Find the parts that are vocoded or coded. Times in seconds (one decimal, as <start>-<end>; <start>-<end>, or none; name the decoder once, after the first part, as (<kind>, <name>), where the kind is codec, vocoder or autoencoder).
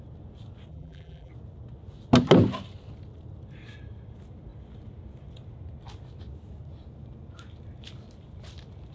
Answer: 0.7-1.3 (vocoder, BigVGAN v2)